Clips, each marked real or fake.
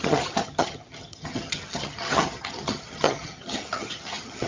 fake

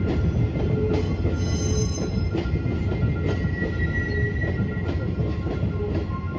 real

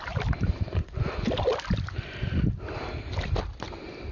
real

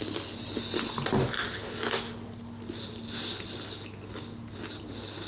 real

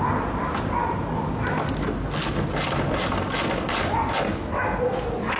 real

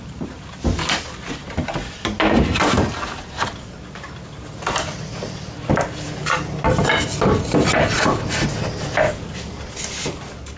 real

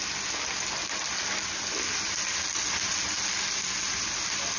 real